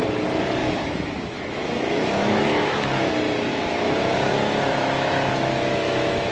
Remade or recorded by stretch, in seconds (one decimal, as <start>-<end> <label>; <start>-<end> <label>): 0.0-0.6 recorded; 0.6-3.1 remade; 3.1-3.5 recorded; 3.5-6.3 remade